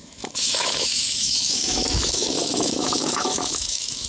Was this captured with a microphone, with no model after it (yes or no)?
no